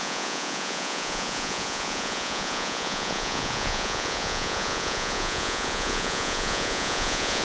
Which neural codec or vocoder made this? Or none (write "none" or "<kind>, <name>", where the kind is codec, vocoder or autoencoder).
vocoder, Vocos